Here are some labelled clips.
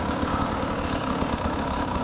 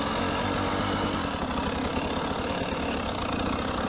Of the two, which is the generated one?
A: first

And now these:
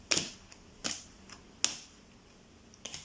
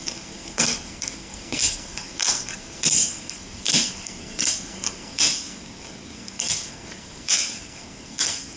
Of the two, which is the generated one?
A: second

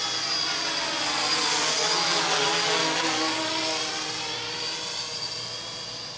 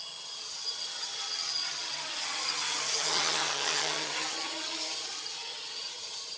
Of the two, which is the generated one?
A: second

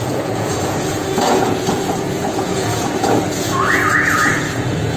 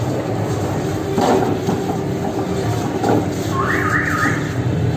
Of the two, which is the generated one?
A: first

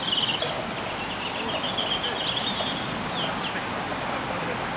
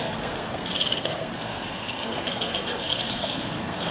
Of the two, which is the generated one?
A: second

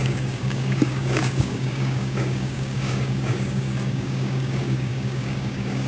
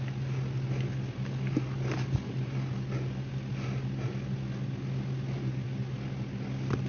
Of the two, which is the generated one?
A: first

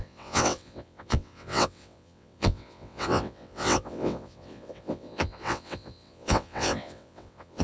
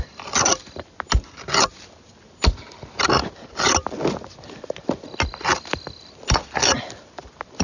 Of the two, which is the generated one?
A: first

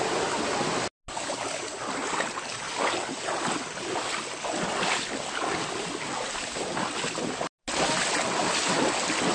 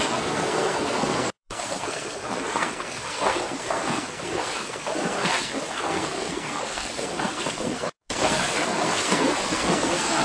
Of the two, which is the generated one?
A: second